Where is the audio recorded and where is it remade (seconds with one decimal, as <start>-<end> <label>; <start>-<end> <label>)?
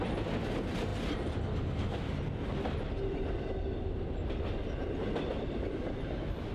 0.0-6.5 recorded